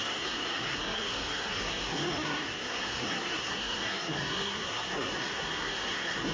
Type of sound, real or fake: fake